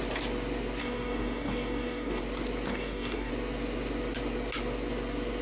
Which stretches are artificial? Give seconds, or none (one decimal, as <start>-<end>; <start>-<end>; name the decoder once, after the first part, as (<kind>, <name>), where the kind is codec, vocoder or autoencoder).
0.8-2.2 (codec, DAC); 2.7-3.3